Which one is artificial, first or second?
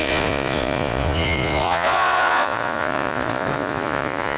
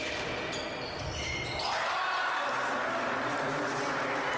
first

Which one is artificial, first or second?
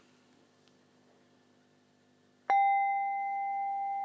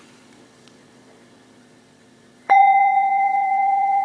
second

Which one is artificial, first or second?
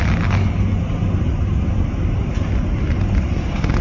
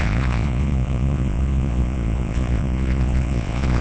second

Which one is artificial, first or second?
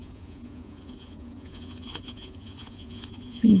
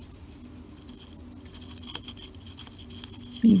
first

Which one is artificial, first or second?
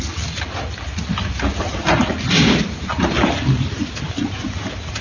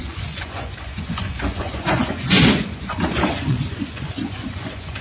second